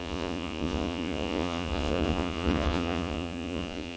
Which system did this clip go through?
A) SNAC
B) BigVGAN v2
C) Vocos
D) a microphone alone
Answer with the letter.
C